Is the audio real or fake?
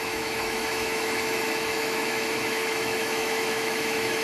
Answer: fake